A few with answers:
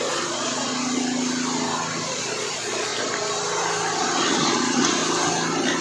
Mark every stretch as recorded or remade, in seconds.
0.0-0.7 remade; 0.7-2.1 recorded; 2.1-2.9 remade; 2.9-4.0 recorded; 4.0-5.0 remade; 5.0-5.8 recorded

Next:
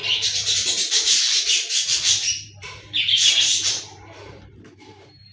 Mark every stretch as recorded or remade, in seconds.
0.0-5.3 remade

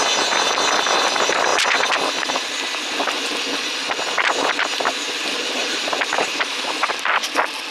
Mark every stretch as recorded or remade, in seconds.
0.0-5.6 recorded; 5.6-7.1 remade; 7.1-7.7 recorded

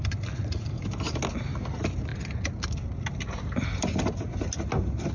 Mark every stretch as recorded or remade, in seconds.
0.0-5.1 recorded

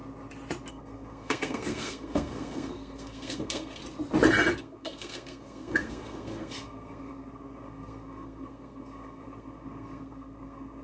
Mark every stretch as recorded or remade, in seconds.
0.0-0.7 recorded; 0.7-3.8 remade; 3.8-4.6 recorded; 4.6-10.8 remade

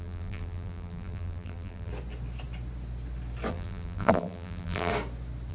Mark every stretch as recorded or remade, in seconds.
0.0-1.9 remade; 1.9-3.5 recorded; 3.5-4.9 remade; 4.9-5.5 recorded

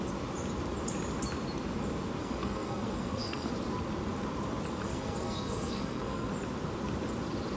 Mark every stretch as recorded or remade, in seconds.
0.0-2.2 recorded; 2.2-3.5 remade; 3.5-4.8 recorded; 4.8-6.3 remade; 6.3-7.6 recorded